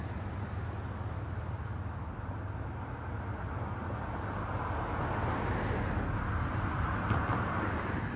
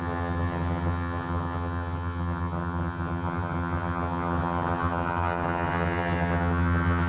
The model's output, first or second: second